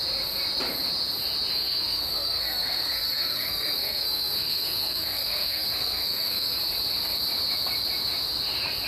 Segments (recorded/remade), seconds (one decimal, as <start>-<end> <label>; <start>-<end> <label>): 0.0-1.5 recorded; 1.5-6.6 remade; 6.6-8.9 recorded